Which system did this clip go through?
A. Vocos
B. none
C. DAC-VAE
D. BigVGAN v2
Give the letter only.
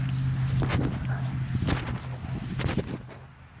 B